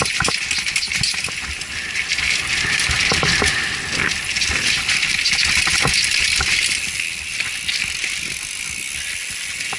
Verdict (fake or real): real